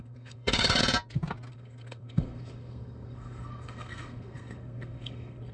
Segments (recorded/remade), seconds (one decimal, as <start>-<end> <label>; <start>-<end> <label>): 0.0-0.8 remade; 0.8-1.5 recorded; 1.5-5.5 remade